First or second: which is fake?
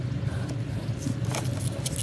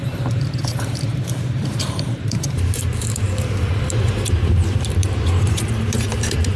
second